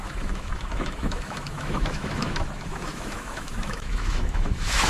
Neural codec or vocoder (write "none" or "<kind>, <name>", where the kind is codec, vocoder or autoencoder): autoencoder, DAC-VAE